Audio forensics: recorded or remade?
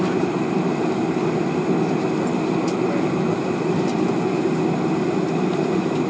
recorded